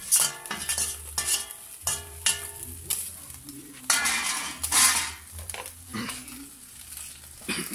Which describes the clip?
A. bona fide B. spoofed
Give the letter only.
A